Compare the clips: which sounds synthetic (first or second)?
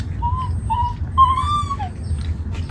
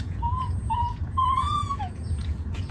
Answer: second